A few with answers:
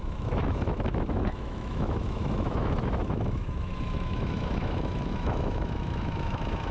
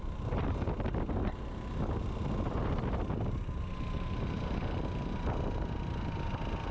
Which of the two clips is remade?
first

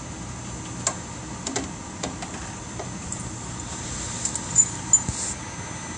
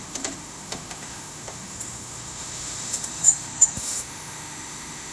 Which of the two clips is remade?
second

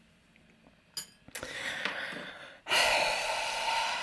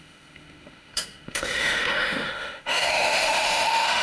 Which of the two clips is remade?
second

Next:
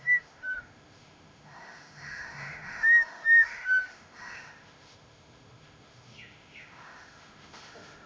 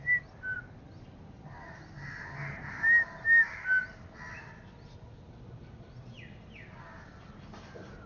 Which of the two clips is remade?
first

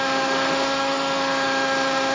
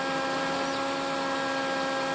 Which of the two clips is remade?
first